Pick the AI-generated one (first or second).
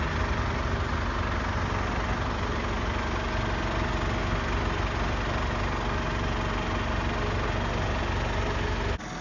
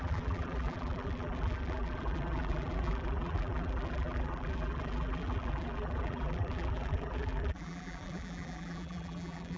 second